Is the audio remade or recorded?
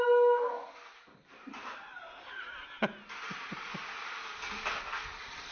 recorded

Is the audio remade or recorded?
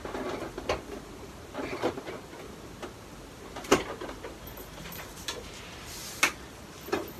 recorded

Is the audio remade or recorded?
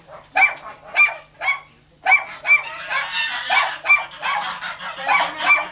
recorded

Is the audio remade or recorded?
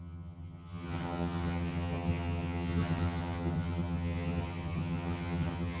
remade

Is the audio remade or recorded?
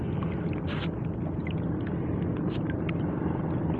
recorded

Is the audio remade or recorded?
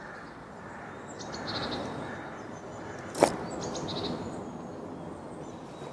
recorded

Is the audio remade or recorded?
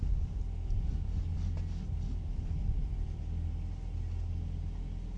recorded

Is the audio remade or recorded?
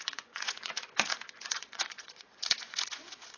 remade